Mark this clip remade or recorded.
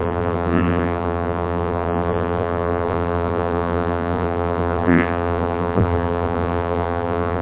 remade